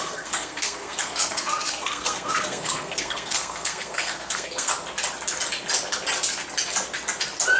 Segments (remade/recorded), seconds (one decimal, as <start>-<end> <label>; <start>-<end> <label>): 0.0-4.7 remade; 4.7-7.6 recorded